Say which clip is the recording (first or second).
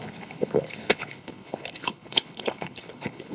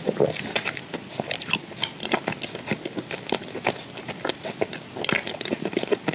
second